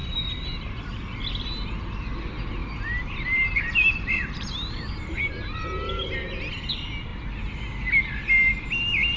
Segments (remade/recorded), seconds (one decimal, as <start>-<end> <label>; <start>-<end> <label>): 0.0-2.6 recorded; 2.6-5.3 remade; 5.3-9.2 recorded